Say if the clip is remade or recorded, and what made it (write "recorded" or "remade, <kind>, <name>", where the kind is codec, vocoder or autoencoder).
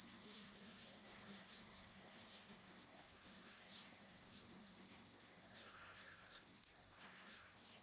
remade, codec, SNAC